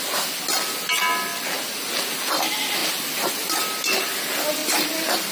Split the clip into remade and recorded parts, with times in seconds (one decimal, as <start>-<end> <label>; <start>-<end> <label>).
0.0-5.3 recorded